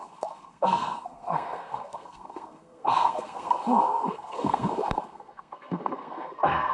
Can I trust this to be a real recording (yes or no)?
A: no